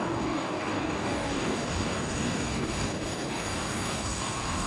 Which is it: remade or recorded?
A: remade